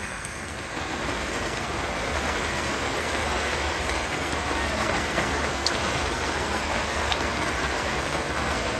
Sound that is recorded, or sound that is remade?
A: remade